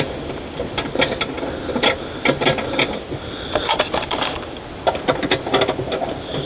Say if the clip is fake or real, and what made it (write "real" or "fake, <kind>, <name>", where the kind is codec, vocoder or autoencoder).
real